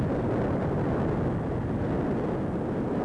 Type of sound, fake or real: real